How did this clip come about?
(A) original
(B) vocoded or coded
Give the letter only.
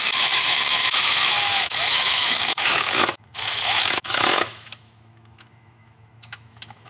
B